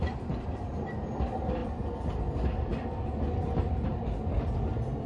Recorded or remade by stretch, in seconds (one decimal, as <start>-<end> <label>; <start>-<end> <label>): 0.0-5.1 recorded